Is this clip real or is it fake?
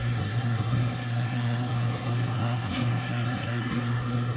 fake